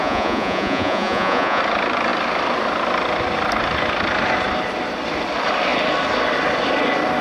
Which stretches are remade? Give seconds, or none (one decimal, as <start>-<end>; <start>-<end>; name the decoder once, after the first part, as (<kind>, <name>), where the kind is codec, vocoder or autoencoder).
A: 0.0-1.6 (vocoder, Vocos)